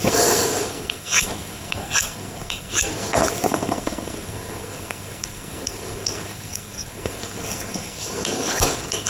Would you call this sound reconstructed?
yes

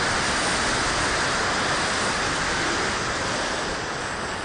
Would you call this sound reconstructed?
no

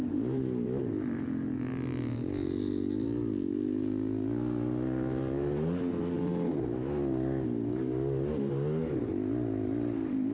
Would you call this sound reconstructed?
no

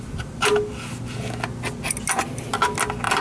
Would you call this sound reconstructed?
no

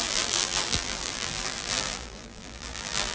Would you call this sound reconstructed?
yes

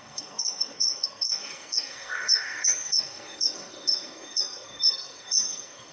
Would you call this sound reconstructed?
yes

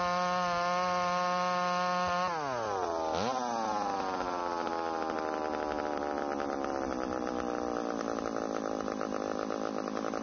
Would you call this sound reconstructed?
no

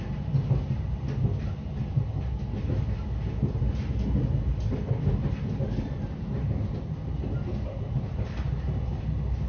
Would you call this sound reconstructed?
no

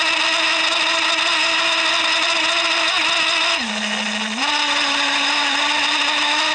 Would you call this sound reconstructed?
no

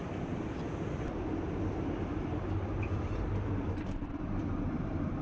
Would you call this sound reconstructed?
no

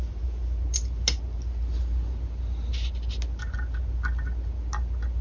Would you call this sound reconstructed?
no